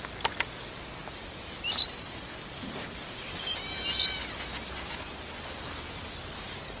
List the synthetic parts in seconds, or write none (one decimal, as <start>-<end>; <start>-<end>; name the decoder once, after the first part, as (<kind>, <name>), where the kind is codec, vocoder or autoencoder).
none